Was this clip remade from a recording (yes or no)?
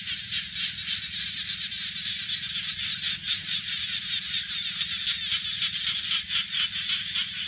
no